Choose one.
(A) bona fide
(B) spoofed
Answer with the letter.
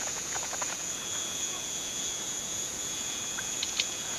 B